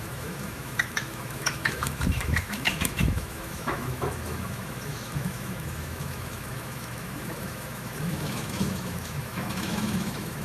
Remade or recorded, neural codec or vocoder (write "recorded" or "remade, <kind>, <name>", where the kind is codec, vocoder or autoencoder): remade, autoencoder, DAC-VAE